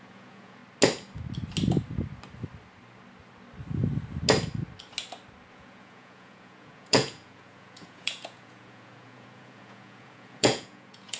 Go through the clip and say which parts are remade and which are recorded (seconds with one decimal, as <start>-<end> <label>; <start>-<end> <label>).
0.0-0.6 remade; 0.6-5.5 recorded; 5.5-11.2 remade